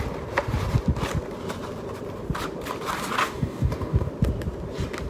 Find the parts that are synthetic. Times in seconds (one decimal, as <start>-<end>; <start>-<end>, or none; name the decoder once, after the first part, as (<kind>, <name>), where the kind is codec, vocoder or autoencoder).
3.2-4.1 (codec, DAC)